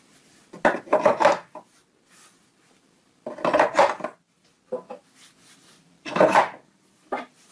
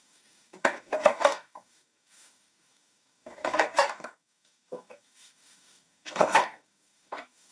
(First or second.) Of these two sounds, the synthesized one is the second